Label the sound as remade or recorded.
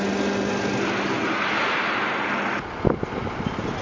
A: recorded